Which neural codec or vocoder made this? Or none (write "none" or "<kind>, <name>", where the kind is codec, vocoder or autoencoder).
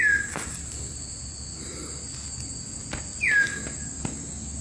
none